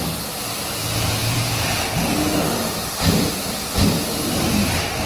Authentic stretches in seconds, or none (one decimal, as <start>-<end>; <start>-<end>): 0.0-5.1